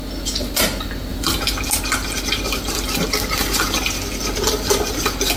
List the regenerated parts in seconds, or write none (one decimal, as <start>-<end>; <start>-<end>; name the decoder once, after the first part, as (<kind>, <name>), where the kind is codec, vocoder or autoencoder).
none